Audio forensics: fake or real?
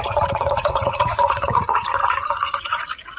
fake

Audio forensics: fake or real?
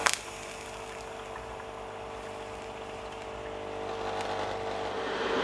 real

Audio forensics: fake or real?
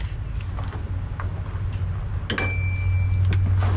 real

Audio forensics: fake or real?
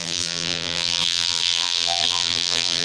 fake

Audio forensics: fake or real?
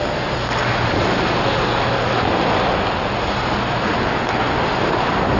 real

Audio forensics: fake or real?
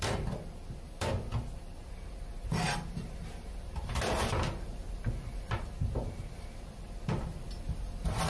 fake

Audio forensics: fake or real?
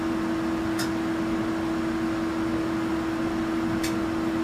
real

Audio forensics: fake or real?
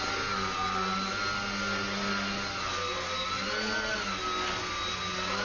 real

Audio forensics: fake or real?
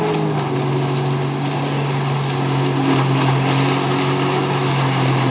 real